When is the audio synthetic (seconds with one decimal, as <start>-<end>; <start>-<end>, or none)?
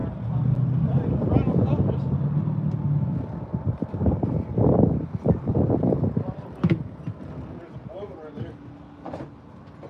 3.5-7.3